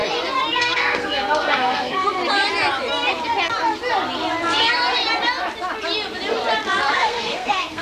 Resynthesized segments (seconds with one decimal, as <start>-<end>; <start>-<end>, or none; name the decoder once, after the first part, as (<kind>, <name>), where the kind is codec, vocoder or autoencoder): 0.6-2.2 (codec, SNAC); 6.9-7.8